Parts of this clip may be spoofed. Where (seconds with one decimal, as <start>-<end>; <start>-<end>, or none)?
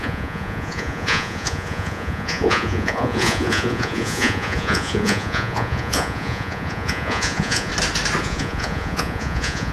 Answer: 0.0-7.7; 8.2-9.7